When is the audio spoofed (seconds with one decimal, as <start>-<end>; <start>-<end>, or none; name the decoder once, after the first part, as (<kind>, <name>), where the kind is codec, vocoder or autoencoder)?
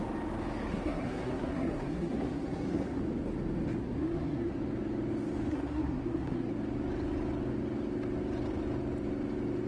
0.7-3.0 (codec, SNAC); 3.8-4.6; 5.5-6.5